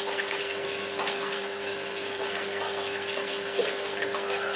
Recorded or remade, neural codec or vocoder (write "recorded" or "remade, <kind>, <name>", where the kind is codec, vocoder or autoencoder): remade, codec, SNAC